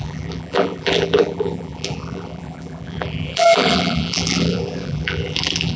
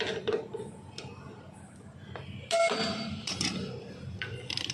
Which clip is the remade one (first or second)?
first